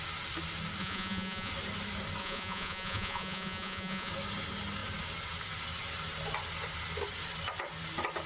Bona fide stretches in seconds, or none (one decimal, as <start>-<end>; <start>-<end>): 0.0-0.8; 1.5-2.2; 4.1-8.3